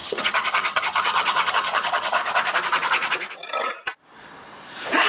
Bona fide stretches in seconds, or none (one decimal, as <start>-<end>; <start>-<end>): 2.2-5.1